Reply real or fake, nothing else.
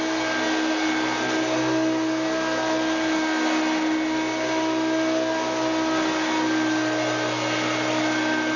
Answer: real